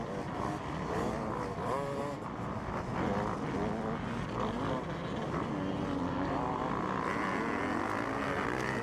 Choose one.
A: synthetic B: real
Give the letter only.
B